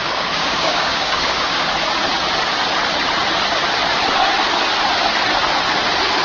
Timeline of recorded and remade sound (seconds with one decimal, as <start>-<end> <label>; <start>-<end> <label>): 0.0-1.7 remade; 1.7-6.2 recorded